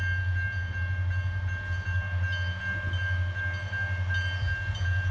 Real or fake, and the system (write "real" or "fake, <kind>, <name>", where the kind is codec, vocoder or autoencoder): real